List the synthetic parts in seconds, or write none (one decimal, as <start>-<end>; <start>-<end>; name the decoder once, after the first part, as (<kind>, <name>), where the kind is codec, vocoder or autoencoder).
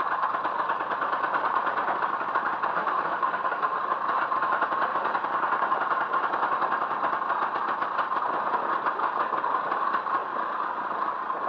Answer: 2.7-3.8 (autoencoder, DAC-VAE)